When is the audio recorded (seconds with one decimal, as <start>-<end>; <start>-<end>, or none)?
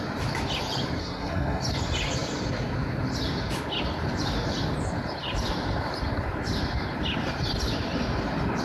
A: 0.0-1.0; 1.6-8.6